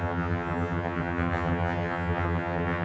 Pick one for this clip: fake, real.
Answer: fake